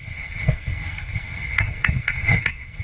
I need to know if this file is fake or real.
fake